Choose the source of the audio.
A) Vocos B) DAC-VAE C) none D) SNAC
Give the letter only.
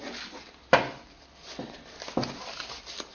C